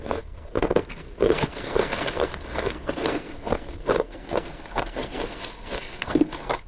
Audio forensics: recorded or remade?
remade